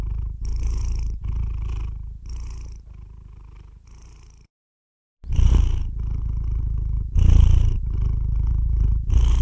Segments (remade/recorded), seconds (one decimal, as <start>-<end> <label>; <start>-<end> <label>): 0.0-9.4 remade